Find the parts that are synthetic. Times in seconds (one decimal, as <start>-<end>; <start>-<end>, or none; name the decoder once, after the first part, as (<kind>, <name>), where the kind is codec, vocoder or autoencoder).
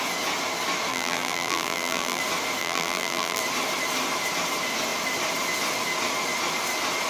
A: 0.9-2.2 (vocoder, BigVGAN v2); 2.6-3.4